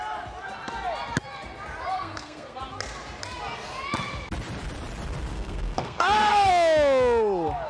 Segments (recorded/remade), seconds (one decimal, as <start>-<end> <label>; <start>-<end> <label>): 0.0-1.9 recorded; 1.9-2.6 remade; 2.6-5.3 recorded; 5.3-6.5 remade; 6.5-7.7 recorded